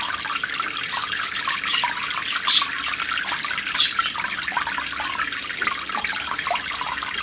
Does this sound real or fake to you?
real